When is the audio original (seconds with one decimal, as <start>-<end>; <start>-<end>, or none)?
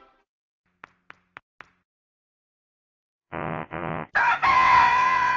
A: 0.0-2.9; 4.1-4.5